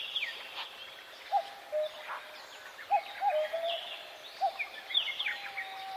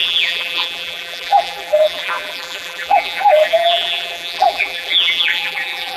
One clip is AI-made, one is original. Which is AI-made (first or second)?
second